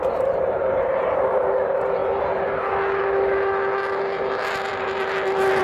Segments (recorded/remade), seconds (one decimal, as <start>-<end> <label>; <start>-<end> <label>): 0.0-1.5 remade; 1.5-2.0 recorded; 2.0-2.5 remade; 2.5-5.6 recorded